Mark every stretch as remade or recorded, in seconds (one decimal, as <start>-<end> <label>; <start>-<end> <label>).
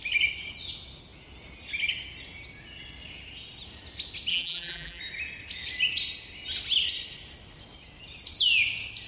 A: 0.0-4.3 recorded; 4.3-5.0 remade; 5.0-9.1 recorded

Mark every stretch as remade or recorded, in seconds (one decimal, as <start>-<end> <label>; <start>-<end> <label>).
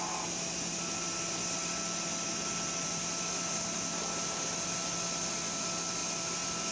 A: 0.0-6.7 recorded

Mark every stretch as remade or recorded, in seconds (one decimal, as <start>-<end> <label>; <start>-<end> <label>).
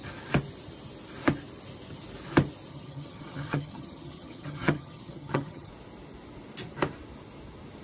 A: 0.0-2.7 recorded; 2.7-5.7 remade; 5.7-7.8 recorded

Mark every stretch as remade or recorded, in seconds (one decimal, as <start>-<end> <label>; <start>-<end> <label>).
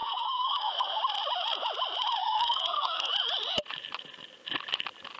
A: 0.0-1.0 remade; 1.0-2.2 recorded; 2.2-3.1 remade; 3.1-5.2 recorded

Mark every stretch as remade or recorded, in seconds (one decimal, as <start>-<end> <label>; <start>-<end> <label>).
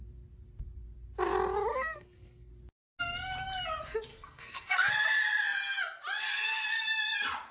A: 0.0-1.7 recorded; 1.7-2.5 remade; 2.5-4.1 recorded; 4.1-4.9 remade; 4.9-7.5 recorded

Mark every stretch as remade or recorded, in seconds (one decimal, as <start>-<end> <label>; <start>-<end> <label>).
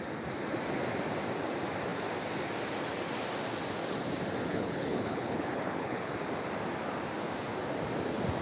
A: 0.0-4.5 recorded; 4.5-6.1 remade; 6.1-8.4 recorded